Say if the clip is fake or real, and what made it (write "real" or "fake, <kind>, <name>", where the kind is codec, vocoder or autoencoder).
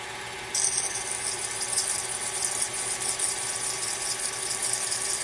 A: real